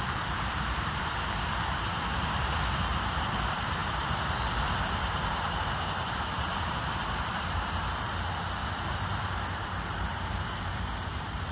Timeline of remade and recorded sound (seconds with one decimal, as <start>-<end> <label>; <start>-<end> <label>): 0.0-8.1 remade; 8.1-9.9 recorded; 9.9-11.5 remade